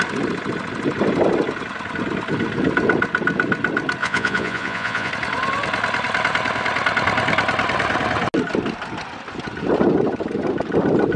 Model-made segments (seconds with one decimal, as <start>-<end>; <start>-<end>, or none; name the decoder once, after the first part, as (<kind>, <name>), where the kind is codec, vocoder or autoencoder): 4.0-5.1 (vocoder, Vocos)